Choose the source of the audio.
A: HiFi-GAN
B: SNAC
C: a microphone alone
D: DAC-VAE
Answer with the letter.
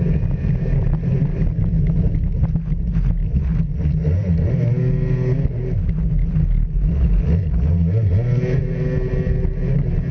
C